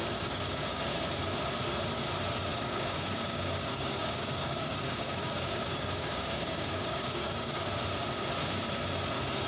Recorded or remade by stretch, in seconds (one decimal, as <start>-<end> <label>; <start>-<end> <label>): 0.0-0.8 remade; 0.8-2.5 recorded; 2.5-7.7 remade; 7.7-9.5 recorded